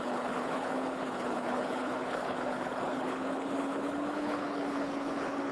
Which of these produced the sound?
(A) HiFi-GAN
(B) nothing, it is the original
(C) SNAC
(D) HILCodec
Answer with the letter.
D